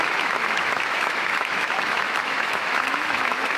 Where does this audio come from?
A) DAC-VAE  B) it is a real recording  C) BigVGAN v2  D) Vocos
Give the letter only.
A